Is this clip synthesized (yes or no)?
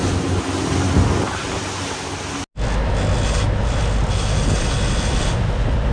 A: no